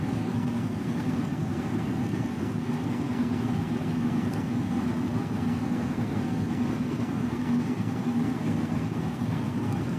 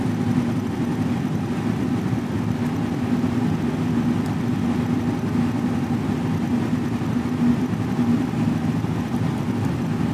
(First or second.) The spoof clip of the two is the first